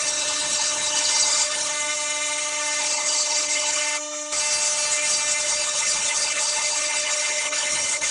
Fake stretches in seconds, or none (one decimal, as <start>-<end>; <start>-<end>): 0.0-1.7; 2.8-3.8; 5.4-8.1